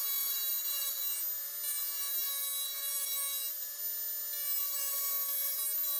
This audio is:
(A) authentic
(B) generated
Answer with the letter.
A